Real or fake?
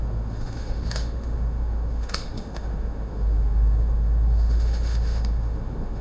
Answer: fake